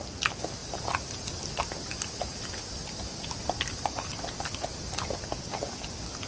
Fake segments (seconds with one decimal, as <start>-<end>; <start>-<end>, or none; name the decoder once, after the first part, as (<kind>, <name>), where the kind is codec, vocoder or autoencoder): none